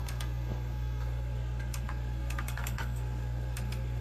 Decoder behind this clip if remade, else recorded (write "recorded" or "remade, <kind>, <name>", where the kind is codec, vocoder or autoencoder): remade, codec, SNAC